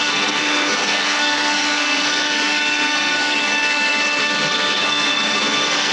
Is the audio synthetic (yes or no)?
yes